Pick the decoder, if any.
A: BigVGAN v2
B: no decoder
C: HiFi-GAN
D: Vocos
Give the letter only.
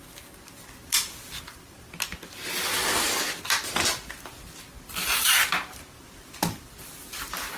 B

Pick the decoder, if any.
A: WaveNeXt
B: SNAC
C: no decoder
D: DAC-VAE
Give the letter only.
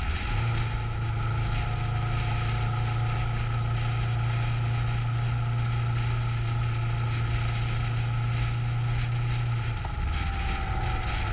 C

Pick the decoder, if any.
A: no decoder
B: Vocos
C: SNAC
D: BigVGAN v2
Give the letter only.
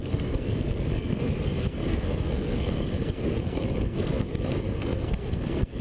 C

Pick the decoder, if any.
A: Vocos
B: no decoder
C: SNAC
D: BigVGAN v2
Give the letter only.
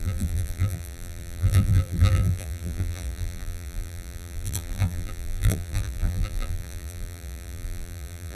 D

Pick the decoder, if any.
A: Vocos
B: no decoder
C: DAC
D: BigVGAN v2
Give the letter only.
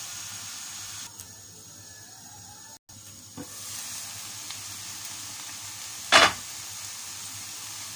B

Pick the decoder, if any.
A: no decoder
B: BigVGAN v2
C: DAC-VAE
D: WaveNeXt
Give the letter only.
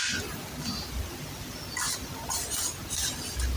A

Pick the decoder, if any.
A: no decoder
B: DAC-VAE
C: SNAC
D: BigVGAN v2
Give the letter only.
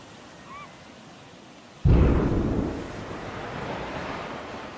A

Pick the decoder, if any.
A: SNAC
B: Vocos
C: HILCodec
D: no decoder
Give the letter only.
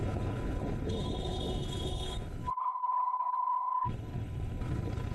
C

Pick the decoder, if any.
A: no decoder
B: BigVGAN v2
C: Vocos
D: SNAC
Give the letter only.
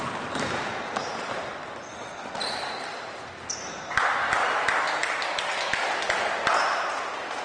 A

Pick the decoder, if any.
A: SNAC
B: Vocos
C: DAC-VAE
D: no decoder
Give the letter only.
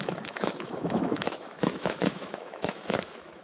C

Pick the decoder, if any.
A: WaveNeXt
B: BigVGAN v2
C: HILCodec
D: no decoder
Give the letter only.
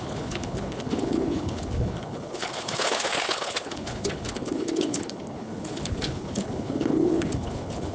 C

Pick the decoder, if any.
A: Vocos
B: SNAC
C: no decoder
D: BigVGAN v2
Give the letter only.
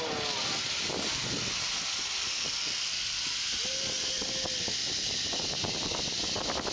C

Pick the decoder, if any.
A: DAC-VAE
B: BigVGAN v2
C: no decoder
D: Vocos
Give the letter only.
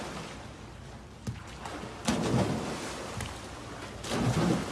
C